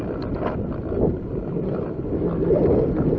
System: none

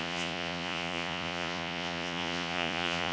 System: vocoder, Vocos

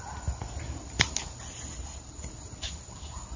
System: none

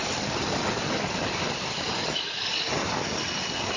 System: none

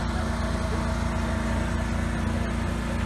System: none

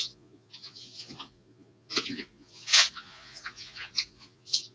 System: vocoder, Vocos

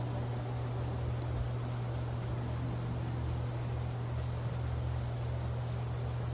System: none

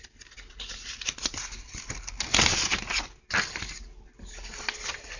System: none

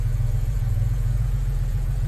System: vocoder, Vocos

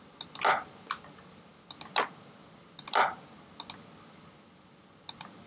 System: none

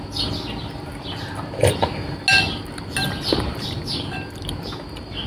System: none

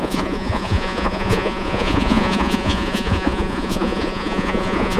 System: vocoder, Vocos